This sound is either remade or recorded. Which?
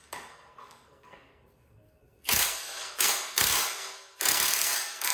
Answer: remade